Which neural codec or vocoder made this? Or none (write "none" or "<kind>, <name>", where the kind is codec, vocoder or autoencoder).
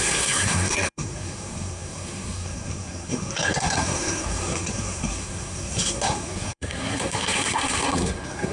codec, SNAC